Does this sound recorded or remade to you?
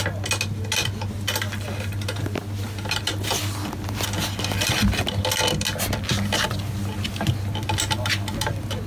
recorded